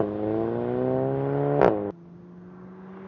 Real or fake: real